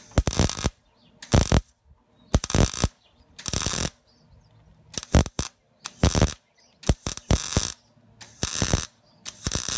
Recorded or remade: recorded